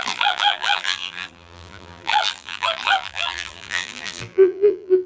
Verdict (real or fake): fake